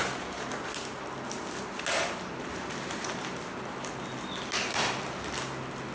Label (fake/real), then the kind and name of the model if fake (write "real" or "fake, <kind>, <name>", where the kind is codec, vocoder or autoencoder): real